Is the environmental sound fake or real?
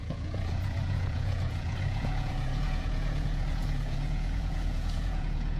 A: fake